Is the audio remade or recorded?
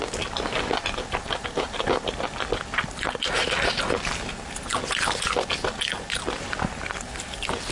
recorded